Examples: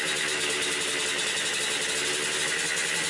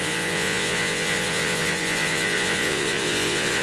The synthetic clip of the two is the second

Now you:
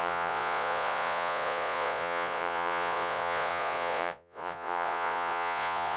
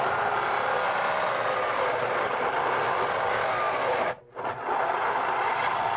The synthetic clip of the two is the first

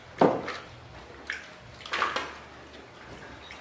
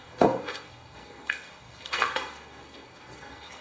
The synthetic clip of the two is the second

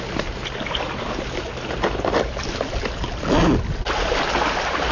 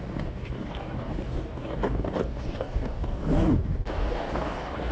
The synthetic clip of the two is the second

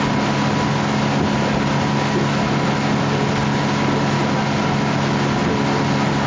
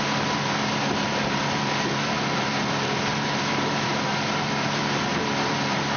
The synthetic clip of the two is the second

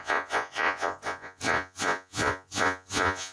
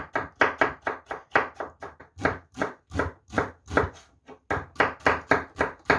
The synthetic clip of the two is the first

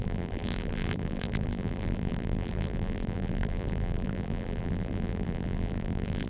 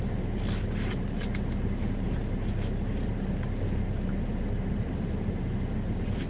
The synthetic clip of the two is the first